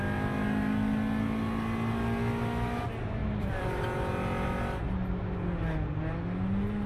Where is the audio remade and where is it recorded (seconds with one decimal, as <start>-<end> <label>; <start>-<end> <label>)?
0.0-3.2 recorded; 3.2-3.8 remade; 3.8-6.9 recorded